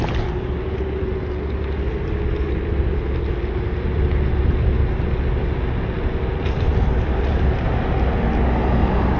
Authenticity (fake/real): real